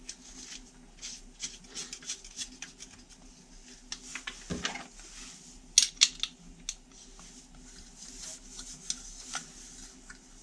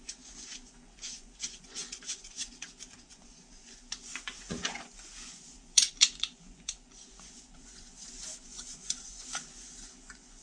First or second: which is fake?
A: second